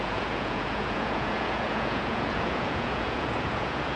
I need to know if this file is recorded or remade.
remade